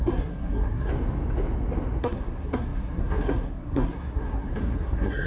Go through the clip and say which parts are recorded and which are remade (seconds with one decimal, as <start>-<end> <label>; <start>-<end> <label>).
0.0-0.9 remade; 0.9-2.0 recorded; 2.0-5.3 remade